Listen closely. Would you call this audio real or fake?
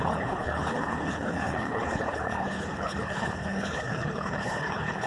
fake